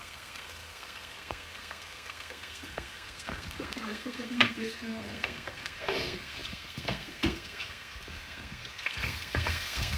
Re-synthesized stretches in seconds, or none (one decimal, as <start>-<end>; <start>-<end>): 0.0-10.0